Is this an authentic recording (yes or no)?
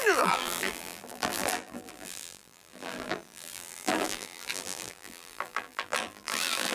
no